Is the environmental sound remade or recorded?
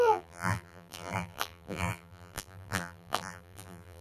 remade